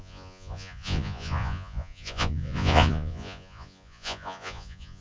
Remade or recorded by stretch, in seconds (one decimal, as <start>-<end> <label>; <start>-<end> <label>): 0.0-5.0 remade